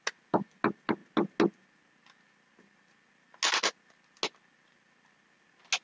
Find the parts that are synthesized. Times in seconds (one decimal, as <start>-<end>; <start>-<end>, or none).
none